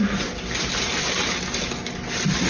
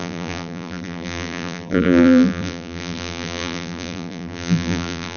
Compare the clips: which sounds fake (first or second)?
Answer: second